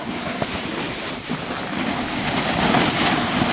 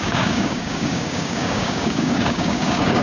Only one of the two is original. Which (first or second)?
first